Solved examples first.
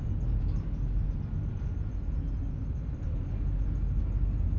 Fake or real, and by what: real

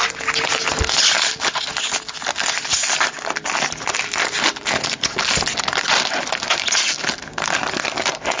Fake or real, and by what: real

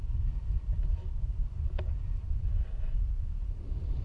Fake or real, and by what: real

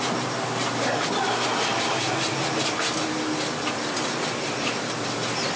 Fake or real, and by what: real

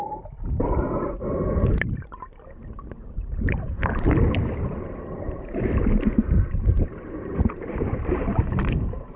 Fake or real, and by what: fake, vocoder, BigVGAN v2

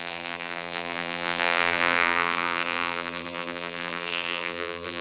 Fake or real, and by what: fake, vocoder, BigVGAN v2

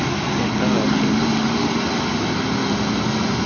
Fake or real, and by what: real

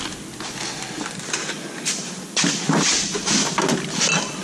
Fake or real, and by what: real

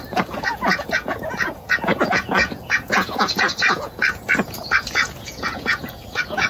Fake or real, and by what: fake, vocoder, Vocos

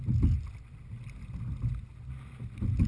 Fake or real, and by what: real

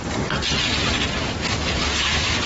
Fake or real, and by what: real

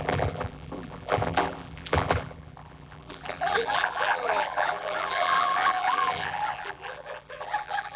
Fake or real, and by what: fake, vocoder, BigVGAN v2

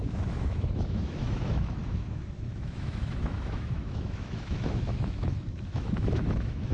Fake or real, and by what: fake, autoencoder, DAC-VAE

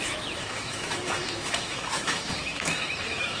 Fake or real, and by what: fake, autoencoder, DAC-VAE